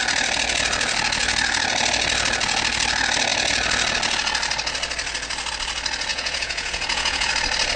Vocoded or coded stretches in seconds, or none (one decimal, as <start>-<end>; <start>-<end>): 6.1-7.3